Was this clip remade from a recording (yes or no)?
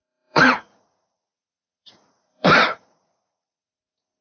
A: yes